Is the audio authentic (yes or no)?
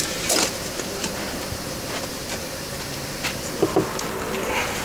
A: yes